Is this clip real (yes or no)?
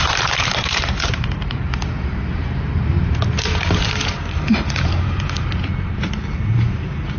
no